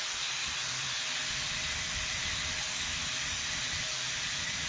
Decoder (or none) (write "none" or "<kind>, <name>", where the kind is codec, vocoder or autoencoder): none